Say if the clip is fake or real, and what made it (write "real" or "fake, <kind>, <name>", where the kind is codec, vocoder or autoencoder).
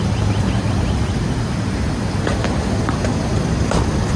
real